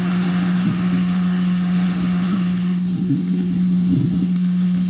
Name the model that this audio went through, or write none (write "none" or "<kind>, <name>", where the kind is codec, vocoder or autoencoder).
codec, SNAC